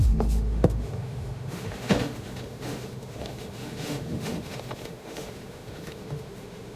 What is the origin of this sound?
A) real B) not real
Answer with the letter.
B